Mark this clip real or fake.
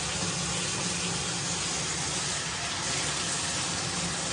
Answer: real